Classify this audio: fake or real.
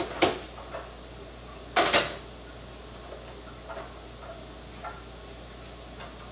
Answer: real